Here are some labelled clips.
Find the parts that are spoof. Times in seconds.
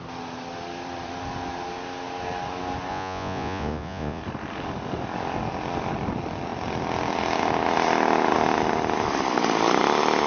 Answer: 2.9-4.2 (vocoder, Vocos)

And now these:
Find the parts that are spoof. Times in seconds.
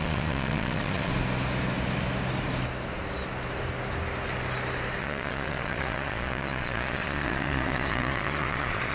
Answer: 0.0-1.1 (vocoder, Vocos); 5.0-8.9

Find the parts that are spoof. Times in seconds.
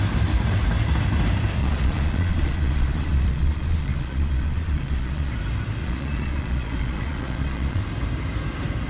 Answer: 1.6-5.3 (vocoder, Vocos); 5.8-7.8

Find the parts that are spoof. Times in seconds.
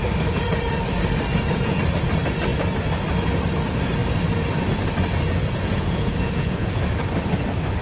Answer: 1.3-1.8 (vocoder, Vocos); 5.4-6.8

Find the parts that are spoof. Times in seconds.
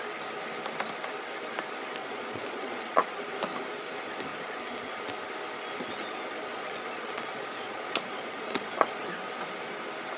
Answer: 2.0-3.2 (vocoder, Vocos); 4.3-5.0; 6.0-9.0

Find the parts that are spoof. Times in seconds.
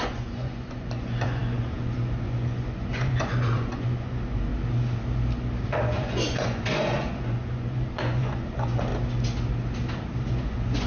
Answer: 0.0-4.5 (vocoder, Vocos); 5.6-8.9; 10.3-10.9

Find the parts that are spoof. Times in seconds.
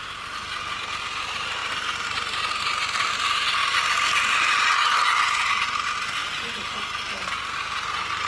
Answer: none